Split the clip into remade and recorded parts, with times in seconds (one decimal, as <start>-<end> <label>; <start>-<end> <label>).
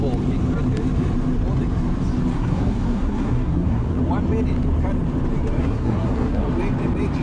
0.0-2.3 recorded; 2.3-4.0 remade; 4.0-5.6 recorded; 5.6-6.5 remade; 6.5-7.2 recorded